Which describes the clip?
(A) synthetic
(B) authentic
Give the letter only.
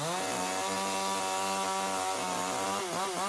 B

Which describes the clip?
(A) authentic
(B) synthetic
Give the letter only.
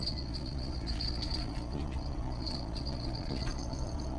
B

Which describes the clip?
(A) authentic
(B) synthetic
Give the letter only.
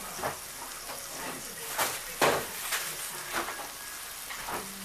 A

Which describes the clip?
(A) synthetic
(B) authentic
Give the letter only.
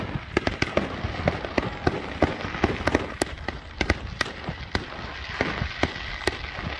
B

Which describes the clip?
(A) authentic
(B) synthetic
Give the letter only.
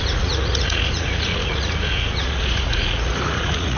B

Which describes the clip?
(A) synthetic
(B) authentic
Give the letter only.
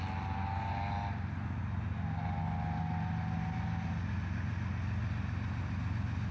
B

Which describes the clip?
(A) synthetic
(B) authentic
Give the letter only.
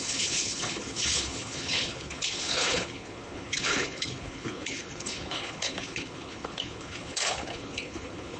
A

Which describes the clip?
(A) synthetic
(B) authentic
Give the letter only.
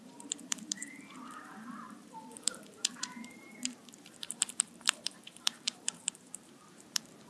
A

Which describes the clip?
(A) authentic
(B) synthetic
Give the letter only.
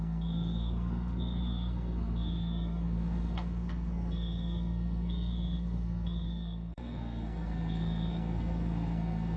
B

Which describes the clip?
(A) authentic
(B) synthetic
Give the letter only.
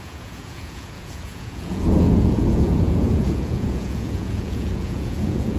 B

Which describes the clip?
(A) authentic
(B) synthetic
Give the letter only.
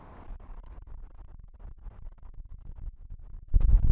A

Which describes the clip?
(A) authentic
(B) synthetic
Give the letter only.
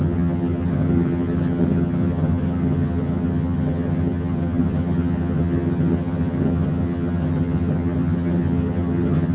B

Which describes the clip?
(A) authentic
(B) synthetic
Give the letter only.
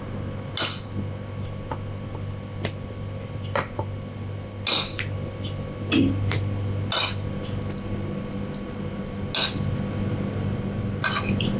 A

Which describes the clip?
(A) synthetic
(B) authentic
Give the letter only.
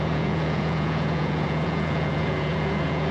A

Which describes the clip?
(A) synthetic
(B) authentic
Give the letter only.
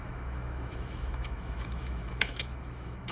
A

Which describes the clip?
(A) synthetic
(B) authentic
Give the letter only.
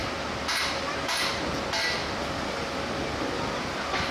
B